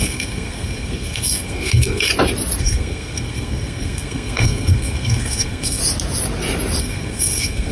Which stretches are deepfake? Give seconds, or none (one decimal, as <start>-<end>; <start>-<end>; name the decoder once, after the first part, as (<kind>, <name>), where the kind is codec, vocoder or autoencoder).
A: 0.0-2.1 (codec, SNAC); 2.6-5.8; 6.8-7.7